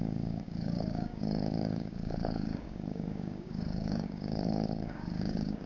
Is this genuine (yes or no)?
no